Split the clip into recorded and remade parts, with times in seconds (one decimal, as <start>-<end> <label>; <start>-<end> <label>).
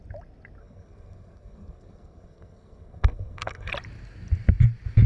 0.0-0.6 recorded; 0.6-3.7 remade; 3.7-5.1 recorded